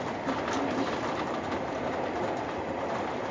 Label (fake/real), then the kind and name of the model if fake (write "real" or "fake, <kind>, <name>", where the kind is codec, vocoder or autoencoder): real